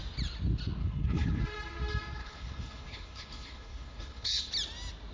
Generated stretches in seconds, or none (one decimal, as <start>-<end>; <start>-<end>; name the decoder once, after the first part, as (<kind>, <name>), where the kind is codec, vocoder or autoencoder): 0.8-1.4 (codec, HILCodec); 2.2-4.5